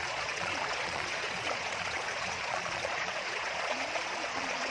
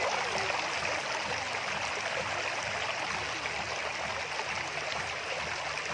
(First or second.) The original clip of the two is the second